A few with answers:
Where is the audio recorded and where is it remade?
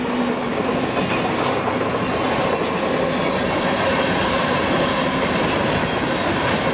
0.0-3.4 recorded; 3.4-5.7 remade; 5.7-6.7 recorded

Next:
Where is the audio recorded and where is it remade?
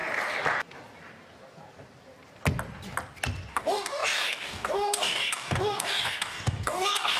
0.0-3.5 recorded; 3.5-7.2 remade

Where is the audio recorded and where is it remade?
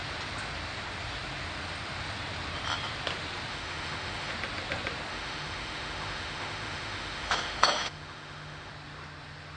0.0-3.5 recorded; 3.5-4.3 remade; 4.3-5.1 recorded; 5.1-8.7 remade; 8.7-9.6 recorded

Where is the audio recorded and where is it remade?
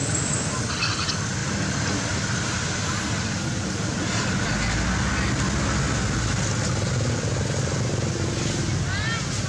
0.0-9.5 recorded